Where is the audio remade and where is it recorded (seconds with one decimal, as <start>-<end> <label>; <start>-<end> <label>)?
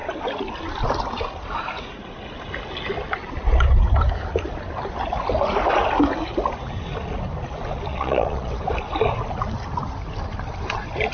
0.0-7.9 recorded; 7.9-8.5 remade; 8.5-11.1 recorded